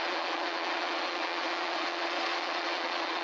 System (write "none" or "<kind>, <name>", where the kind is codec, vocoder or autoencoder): vocoder, Vocos